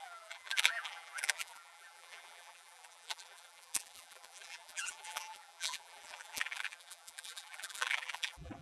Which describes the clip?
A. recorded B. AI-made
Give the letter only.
B